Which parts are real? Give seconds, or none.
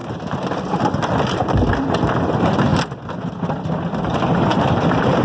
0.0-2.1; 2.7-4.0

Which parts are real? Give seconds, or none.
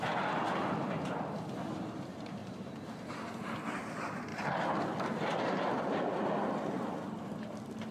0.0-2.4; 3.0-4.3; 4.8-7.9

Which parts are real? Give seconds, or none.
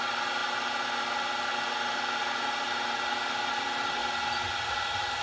0.0-5.2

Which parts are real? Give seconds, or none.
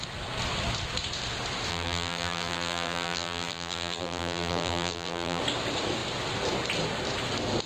0.0-1.7; 5.4-7.7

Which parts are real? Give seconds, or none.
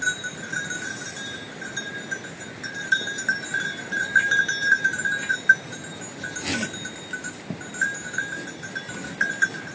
0.0-9.7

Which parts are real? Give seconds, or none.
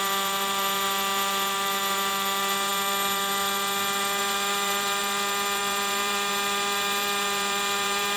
none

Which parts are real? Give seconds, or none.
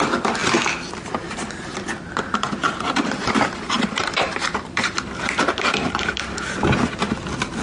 0.0-2.6; 5.1-7.6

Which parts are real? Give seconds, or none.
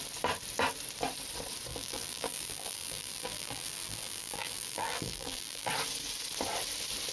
0.0-1.7; 5.7-7.1